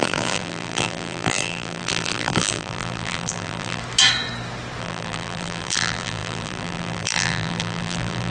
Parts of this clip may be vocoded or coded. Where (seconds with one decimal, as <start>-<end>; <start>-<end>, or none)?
0.0-3.8; 4.8-8.3